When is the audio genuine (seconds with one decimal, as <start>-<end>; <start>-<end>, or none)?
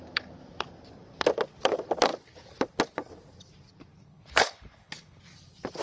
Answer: 0.0-3.9; 5.2-5.8